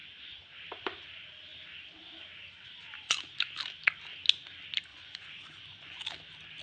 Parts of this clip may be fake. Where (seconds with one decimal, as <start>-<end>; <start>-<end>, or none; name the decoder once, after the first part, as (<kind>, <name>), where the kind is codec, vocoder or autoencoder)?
4.9-6.0 (vocoder, Vocos)